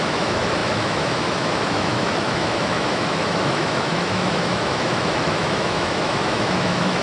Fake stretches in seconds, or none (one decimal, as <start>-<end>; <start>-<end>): 0.0-7.0